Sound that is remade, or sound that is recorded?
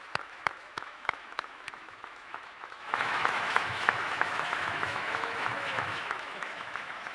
remade